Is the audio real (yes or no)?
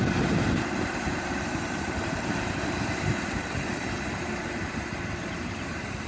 no